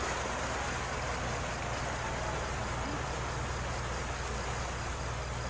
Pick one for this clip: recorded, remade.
recorded